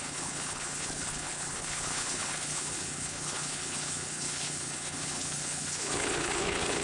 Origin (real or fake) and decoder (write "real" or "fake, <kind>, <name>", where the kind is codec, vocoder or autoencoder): fake, codec, HILCodec